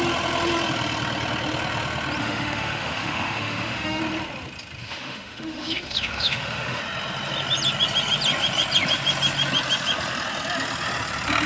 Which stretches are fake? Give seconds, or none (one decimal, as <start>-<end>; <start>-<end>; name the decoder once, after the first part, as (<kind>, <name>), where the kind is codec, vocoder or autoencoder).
2.2-4.0 (autoencoder, DAC-VAE); 4.8-6.8